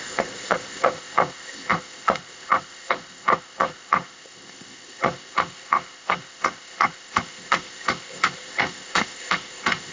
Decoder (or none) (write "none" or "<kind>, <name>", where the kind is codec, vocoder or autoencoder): codec, ZipCodec